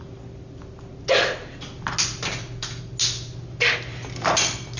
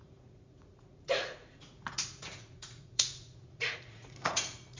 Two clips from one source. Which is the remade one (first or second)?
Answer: second